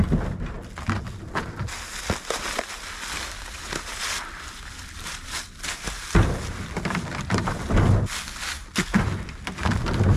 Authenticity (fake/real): real